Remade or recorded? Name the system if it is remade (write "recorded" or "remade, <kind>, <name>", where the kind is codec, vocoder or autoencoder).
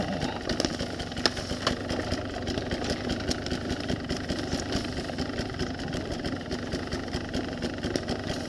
recorded